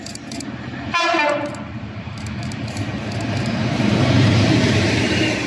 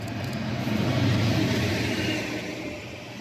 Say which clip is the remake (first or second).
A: first